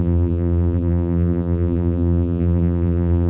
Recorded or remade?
remade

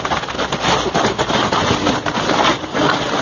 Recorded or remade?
recorded